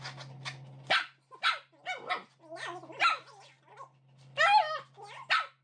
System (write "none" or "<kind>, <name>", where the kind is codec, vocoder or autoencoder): none